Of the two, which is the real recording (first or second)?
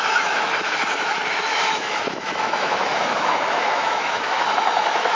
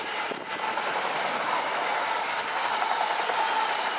second